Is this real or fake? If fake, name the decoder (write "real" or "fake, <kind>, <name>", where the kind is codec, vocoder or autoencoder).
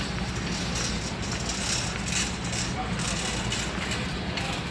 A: real